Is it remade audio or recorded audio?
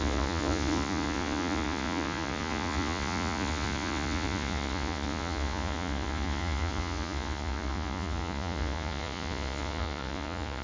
remade